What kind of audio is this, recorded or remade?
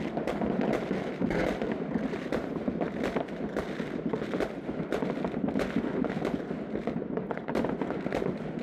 recorded